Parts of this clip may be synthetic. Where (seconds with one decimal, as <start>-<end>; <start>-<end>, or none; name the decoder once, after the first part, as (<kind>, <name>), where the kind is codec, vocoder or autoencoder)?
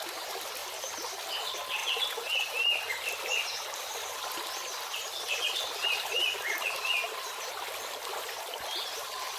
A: none